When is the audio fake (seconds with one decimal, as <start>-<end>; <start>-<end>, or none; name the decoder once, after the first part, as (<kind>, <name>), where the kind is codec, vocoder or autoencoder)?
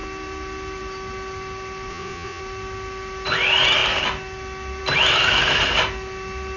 1.9-2.4 (vocoder, Vocos)